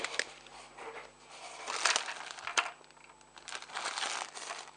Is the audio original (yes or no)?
yes